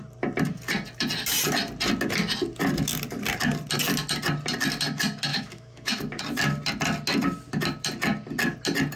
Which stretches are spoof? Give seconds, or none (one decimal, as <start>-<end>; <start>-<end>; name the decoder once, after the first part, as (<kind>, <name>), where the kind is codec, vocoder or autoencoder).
5.3-6.2 (autoencoder, DAC-VAE)